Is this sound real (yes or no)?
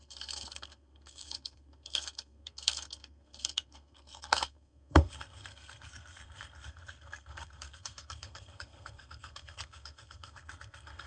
no